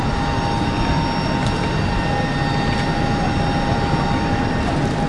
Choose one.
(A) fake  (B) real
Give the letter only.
B